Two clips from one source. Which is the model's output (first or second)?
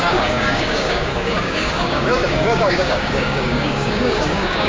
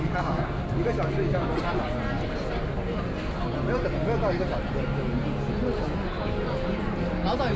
first